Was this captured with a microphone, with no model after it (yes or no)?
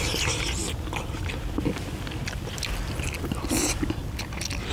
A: yes